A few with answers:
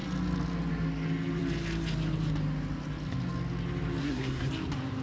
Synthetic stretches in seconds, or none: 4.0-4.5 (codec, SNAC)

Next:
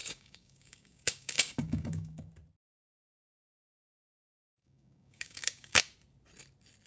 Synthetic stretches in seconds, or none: 0.0-2.3 (codec, DAC); 4.6-5.8

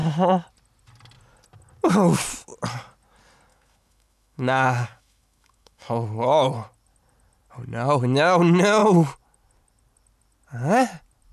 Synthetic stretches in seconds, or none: 3.5-5.9 (autoencoder, DAC-VAE)

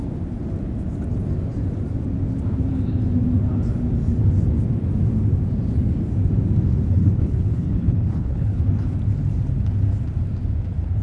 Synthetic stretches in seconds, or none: 7.0-8.6 (codec, HILCodec)

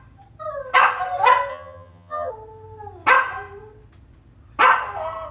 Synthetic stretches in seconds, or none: 1.5-2.3 (vocoder, HiFi-GAN)

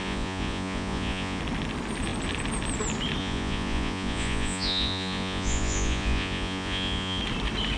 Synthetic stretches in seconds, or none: 0.0-1.4 (vocoder, Vocos); 3.2-7.2